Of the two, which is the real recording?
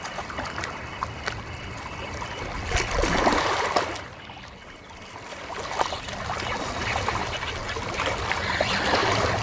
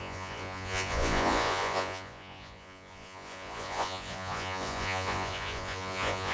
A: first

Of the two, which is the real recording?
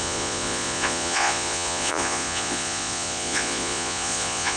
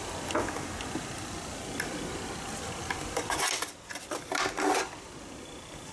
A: second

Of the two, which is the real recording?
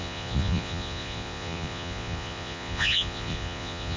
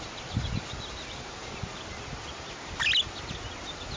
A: second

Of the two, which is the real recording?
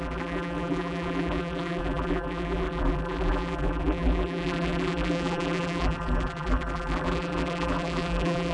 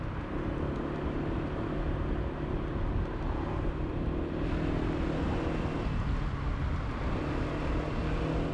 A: second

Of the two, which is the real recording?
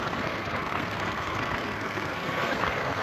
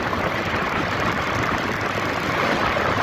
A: second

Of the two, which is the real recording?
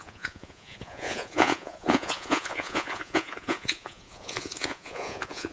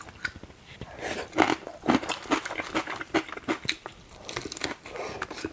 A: second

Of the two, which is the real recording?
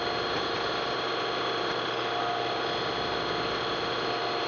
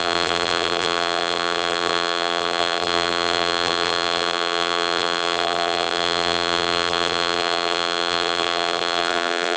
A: first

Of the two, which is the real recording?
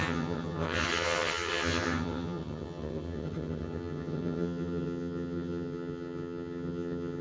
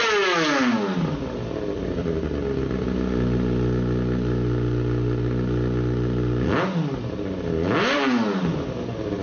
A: second